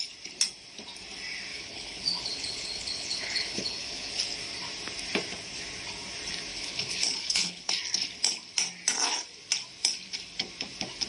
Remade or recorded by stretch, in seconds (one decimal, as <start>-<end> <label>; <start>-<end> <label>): 0.0-1.5 recorded; 1.5-4.1 remade; 4.1-6.5 recorded; 6.5-7.7 remade; 7.7-11.1 recorded